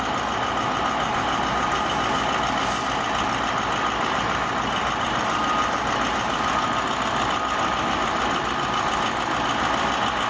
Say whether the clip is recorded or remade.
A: recorded